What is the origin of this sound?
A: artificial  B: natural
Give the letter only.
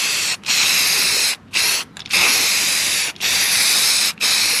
B